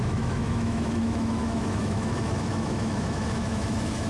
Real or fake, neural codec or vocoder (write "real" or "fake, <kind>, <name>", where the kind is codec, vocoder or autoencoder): fake, autoencoder, DAC-VAE